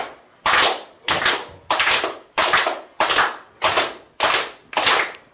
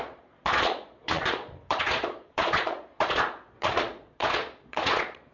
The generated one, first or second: second